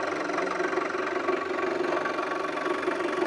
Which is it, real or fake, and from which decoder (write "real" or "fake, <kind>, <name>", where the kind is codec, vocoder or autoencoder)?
real